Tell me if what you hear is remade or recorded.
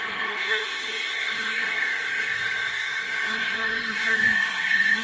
remade